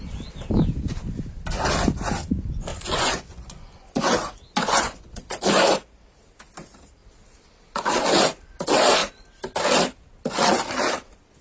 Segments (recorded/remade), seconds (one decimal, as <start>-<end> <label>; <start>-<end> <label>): 0.0-2.7 recorded; 2.7-5.8 remade; 5.8-11.4 recorded